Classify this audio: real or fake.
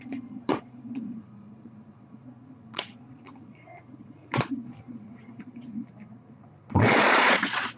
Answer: fake